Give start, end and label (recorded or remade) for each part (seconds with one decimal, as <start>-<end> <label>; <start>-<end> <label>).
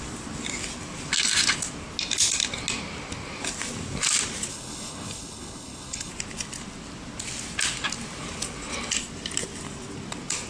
0.0-4.5 recorded; 4.5-6.1 remade; 6.1-10.5 recorded